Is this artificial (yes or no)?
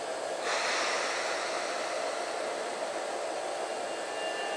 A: no